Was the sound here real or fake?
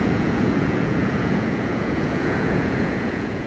fake